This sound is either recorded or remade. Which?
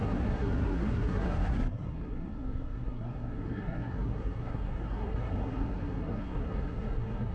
remade